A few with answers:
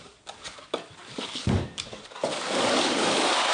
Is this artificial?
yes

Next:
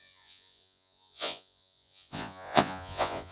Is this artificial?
yes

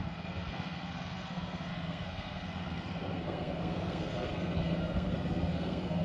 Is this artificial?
yes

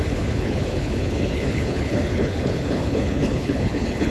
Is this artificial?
yes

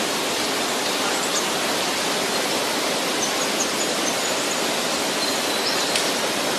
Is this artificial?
yes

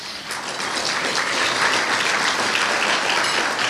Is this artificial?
no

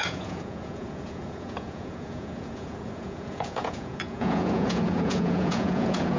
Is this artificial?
yes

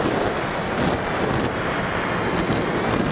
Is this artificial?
no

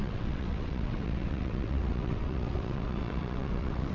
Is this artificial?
yes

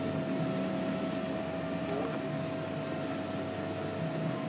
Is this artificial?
no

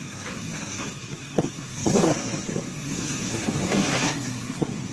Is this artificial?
yes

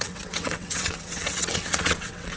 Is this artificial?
yes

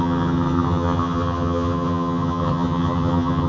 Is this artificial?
yes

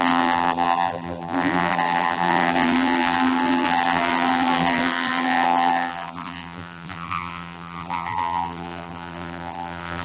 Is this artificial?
yes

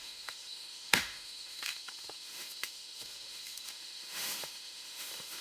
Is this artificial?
yes